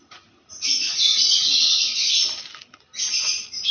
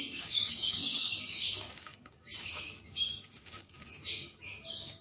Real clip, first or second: first